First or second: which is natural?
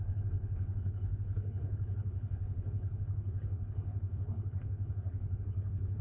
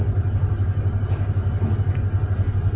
second